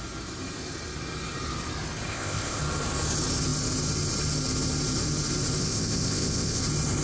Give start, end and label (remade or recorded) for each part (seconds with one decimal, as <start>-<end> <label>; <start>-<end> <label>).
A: 0.0-2.1 recorded; 2.1-2.6 remade; 2.6-5.6 recorded; 5.6-6.6 remade; 6.6-7.0 recorded